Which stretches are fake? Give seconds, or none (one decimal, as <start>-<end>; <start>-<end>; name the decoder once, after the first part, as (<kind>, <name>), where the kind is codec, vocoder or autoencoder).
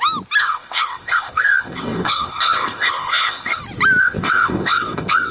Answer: 0.4-3.6 (codec, ZipCodec); 4.0-5.3